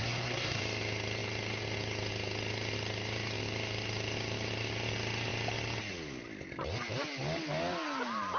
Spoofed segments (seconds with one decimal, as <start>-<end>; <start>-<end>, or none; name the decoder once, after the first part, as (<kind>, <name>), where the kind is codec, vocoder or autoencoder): 0.0-0.6 (codec, SNAC)